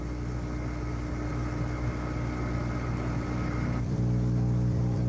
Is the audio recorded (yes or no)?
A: no